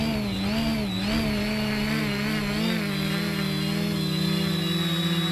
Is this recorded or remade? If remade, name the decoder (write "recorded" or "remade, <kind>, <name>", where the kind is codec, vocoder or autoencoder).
recorded